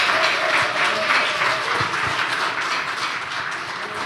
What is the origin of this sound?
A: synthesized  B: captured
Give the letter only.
B